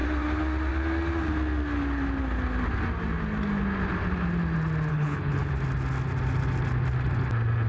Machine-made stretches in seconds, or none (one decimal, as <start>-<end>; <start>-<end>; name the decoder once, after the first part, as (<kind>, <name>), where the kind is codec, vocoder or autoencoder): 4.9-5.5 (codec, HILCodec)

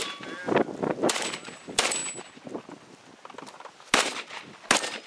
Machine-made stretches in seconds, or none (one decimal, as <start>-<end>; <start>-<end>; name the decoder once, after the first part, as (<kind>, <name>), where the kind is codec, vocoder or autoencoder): none

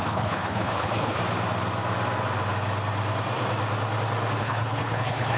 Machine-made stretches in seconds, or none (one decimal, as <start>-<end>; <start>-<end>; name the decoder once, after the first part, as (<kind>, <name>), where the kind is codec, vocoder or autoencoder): 0.0-1.2 (codec, HILCodec); 4.4-5.4

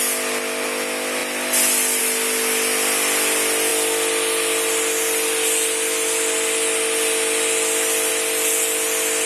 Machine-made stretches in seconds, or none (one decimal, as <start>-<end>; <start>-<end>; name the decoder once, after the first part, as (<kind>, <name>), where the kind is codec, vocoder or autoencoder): none

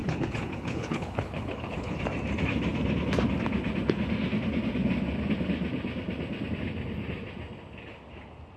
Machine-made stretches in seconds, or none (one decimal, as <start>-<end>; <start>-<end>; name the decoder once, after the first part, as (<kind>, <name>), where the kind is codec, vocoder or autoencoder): 0.0-2.0 (codec, HILCodec)

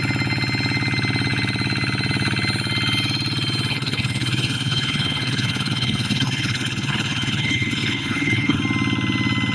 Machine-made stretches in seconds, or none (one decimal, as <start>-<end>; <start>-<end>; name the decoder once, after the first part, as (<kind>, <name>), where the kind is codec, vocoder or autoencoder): 3.7-8.6 (codec, HILCodec)

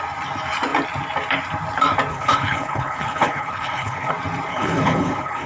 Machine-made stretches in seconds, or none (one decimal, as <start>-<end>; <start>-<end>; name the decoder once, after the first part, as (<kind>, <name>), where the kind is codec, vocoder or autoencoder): 2.1-4.1 (codec, HILCodec); 4.5-5.5